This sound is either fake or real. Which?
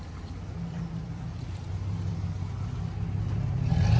real